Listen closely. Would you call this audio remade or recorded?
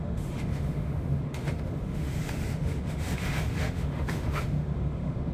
remade